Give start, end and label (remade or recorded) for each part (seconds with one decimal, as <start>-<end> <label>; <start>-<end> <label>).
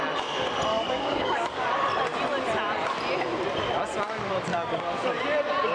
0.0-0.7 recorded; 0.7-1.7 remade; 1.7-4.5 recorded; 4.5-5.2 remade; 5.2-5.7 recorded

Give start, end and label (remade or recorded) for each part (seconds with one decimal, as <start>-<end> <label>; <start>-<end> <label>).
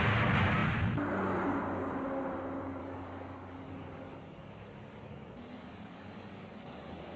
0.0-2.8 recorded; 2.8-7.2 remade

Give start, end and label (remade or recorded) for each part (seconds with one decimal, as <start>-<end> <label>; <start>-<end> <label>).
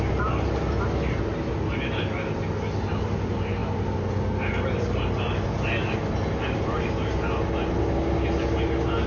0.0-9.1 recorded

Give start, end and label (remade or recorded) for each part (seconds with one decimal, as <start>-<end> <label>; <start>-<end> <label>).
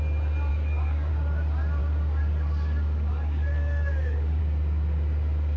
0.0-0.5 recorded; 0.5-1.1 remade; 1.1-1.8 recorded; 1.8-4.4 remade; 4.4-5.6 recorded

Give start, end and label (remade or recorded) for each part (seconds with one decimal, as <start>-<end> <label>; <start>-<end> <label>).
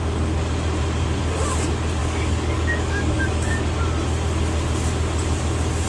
0.0-2.0 recorded; 2.0-3.5 remade; 3.5-5.9 recorded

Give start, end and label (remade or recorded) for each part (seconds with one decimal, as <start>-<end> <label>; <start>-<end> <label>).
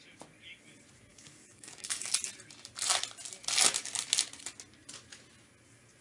0.0-1.1 recorded; 1.1-2.1 remade; 2.1-6.0 recorded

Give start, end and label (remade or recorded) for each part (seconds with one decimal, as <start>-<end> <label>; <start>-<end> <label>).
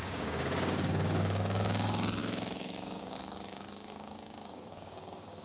0.0-5.4 remade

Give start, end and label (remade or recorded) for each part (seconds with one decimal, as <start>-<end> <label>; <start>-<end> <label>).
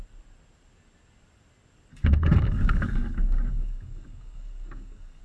0.0-1.9 recorded; 1.9-5.2 remade